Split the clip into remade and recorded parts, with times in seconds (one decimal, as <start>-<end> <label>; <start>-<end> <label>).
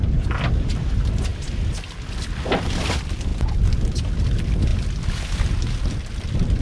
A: 0.0-6.6 recorded